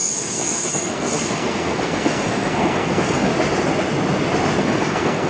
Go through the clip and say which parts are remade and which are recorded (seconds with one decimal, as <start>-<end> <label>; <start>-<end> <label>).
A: 0.0-3.3 remade; 3.3-4.6 recorded; 4.6-5.3 remade